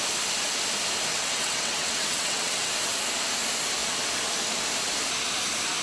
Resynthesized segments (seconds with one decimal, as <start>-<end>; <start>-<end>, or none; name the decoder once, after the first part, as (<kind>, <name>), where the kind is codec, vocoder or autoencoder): 1.1-2.7 (vocoder, WaveNeXt)